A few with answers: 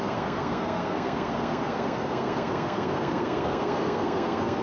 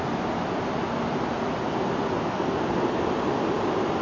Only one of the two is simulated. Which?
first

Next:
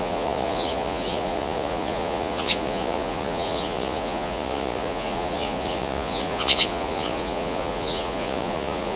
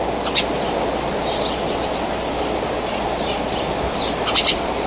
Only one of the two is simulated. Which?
first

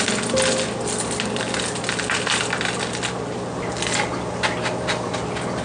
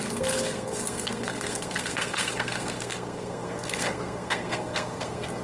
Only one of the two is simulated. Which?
second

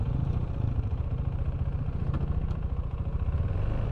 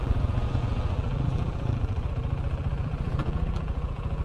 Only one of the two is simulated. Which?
second